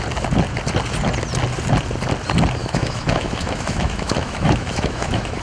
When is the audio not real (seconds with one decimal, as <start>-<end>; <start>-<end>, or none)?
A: 2.6-5.4